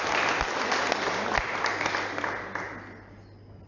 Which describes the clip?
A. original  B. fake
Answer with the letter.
A